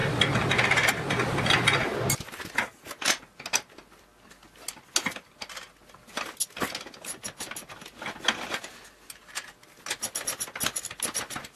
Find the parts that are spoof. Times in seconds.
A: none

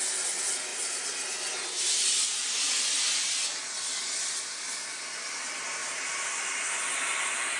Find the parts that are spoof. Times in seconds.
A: 5.8-6.5 (vocoder, BigVGAN v2)

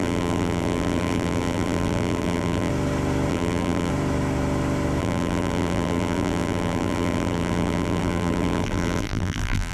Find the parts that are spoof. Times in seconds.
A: 0.0-2.7 (vocoder, BigVGAN v2); 3.3-3.9; 5.0-9.7

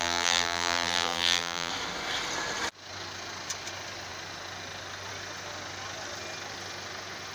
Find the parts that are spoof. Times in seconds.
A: 0.0-1.7 (vocoder, BigVGAN v2)

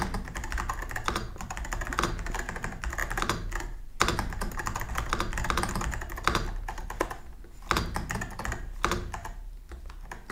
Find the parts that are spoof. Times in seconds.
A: none

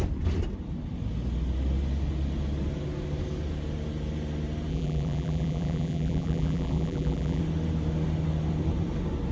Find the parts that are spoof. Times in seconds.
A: 4.7-7.4 (vocoder, BigVGAN v2)

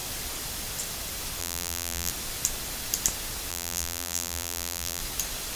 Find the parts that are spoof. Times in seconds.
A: 1.4-2.1 (vocoder, BigVGAN v2); 3.5-5.0

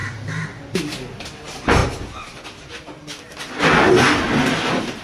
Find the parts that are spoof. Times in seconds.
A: none